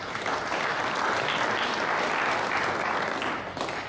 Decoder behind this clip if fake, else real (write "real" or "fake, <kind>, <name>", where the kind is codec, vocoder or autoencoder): real